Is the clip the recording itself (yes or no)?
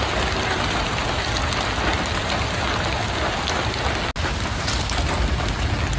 yes